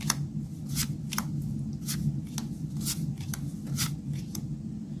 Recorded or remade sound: recorded